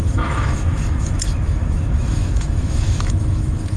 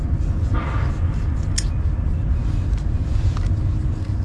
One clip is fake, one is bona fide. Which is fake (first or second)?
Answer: first